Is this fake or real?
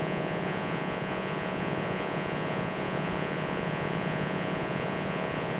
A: fake